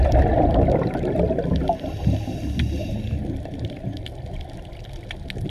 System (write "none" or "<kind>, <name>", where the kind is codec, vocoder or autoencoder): none